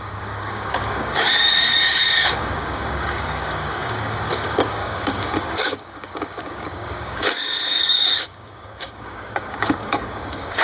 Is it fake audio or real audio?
fake